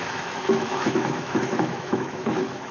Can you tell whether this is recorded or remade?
remade